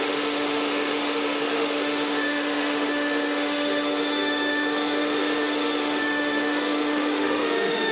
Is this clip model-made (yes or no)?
yes